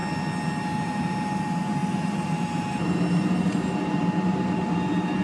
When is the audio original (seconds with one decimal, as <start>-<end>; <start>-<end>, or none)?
0.0-0.6